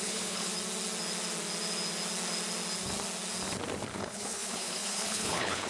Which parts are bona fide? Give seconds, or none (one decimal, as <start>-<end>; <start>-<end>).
0.5-3.9